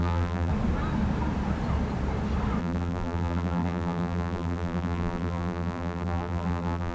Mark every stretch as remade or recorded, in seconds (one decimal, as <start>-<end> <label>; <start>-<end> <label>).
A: 0.0-0.5 remade; 0.5-2.6 recorded; 2.6-6.9 remade